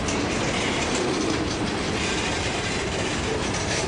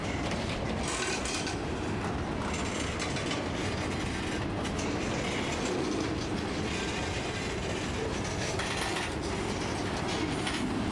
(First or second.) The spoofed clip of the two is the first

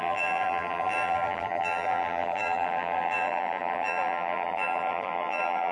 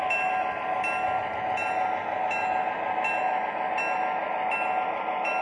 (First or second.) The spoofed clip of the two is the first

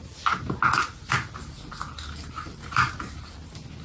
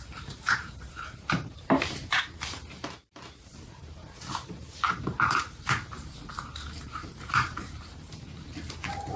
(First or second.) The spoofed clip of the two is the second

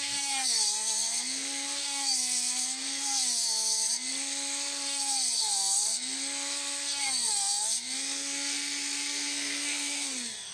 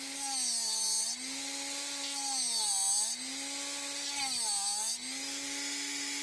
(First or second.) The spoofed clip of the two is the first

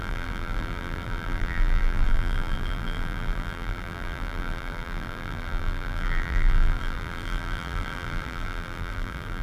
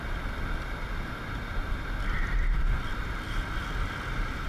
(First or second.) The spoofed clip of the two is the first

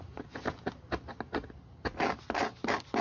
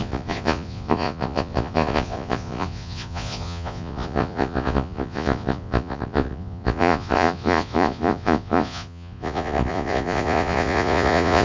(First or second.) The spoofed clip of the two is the second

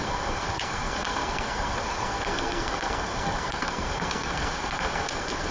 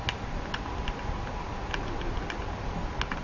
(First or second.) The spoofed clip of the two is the first